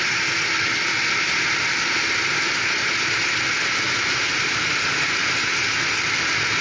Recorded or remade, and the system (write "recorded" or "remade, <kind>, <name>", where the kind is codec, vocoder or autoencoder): recorded